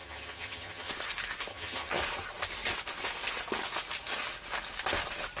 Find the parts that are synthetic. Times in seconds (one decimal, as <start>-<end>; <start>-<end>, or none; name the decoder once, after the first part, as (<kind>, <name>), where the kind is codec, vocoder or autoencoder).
0.0-0.9 (vocoder, HiFi-GAN); 1.5-2.0